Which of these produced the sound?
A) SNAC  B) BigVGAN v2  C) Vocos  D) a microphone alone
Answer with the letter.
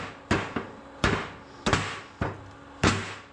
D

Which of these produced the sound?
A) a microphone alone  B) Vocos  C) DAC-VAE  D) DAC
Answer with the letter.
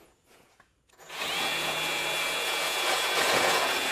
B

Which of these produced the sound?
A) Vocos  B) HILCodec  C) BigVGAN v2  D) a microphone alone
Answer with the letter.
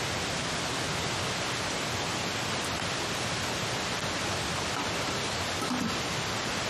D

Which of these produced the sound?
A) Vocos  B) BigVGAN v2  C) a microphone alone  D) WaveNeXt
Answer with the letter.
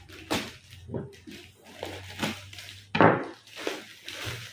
C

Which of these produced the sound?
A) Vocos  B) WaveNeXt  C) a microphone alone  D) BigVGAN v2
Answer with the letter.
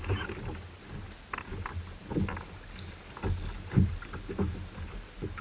C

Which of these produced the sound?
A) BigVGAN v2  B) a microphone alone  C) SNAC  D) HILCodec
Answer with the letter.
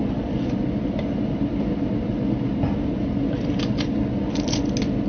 B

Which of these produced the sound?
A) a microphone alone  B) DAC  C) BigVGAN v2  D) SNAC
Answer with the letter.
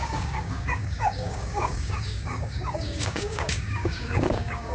B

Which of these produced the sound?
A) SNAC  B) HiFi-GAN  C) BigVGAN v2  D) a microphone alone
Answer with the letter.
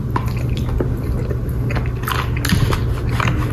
D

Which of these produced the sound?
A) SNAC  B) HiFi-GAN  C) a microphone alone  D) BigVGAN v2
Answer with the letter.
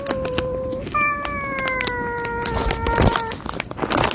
C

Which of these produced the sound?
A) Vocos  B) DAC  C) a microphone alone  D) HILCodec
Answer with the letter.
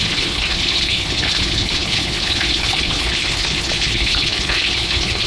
D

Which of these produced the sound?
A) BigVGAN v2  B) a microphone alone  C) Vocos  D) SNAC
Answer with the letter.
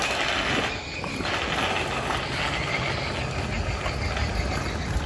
B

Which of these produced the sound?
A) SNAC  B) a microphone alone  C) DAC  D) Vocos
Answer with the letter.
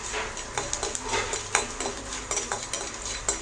B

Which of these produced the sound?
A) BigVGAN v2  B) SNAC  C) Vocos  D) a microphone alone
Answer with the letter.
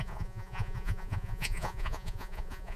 C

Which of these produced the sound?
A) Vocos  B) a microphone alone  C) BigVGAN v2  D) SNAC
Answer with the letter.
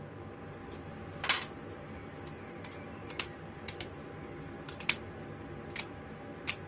B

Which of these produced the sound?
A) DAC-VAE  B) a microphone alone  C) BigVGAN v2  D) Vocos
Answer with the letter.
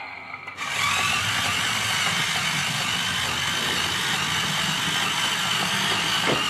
B